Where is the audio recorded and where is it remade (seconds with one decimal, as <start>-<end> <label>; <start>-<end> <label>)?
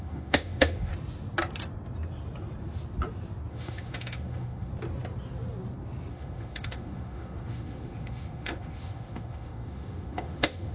0.0-0.9 remade; 0.9-3.5 recorded; 3.5-4.7 remade; 4.7-6.1 recorded; 6.1-10.7 remade